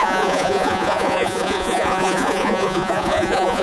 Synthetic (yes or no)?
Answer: yes